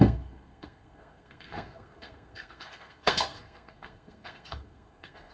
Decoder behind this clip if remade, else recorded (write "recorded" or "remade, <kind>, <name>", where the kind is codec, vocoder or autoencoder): remade, codec, SNAC